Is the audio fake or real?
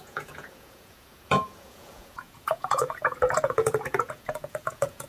fake